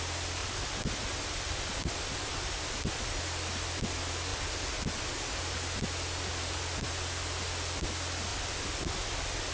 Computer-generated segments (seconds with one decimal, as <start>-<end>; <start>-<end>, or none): 0.4-3.2; 4.3-5.4; 8.3-9.5